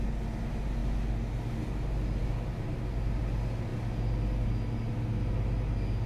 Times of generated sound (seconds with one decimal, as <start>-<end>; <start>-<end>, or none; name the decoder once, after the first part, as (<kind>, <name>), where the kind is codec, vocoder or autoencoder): none